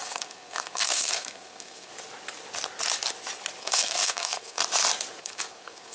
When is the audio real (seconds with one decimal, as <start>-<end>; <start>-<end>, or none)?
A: 1.9-3.6; 4.6-5.2